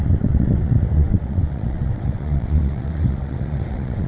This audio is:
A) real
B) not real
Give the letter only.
B